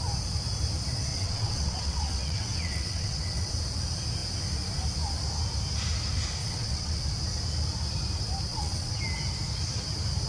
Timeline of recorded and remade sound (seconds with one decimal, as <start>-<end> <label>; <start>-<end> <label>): 0.0-1.1 recorded; 1.1-3.5 remade; 3.5-6.4 recorded; 6.4-7.0 remade; 7.0-8.5 recorded; 8.5-9.0 remade; 9.0-10.3 recorded